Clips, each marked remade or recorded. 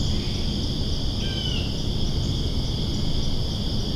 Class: recorded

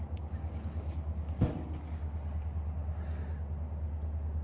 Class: remade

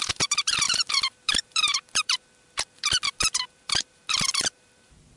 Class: remade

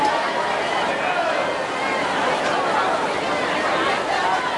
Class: recorded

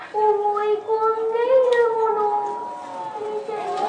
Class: recorded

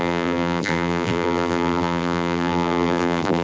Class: remade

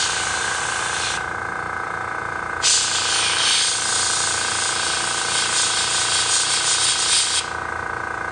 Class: recorded